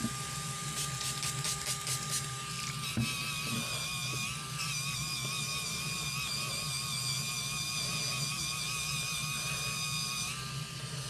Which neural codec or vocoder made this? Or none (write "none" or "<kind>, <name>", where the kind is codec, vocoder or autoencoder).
none